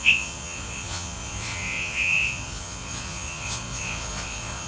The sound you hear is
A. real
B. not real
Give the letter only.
B